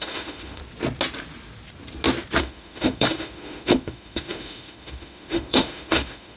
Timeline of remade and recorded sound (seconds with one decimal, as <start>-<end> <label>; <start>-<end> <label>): 0.0-0.6 remade; 0.6-2.4 recorded; 2.4-6.4 remade